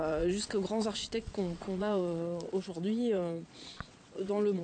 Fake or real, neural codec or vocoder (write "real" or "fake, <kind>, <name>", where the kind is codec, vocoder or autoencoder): fake, vocoder, Vocos